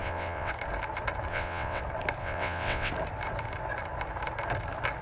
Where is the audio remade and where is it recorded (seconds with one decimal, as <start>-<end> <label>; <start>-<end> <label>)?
0.0-0.5 remade; 0.5-1.3 recorded; 1.3-1.8 remade; 1.8-2.2 recorded; 2.2-2.9 remade; 2.9-5.0 recorded